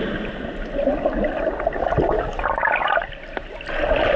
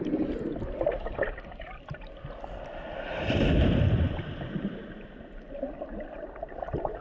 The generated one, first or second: second